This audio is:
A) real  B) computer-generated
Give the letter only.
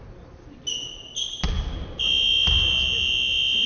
A